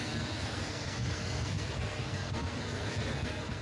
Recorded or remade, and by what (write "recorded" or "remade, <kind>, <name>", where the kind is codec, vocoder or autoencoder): remade, codec, SNAC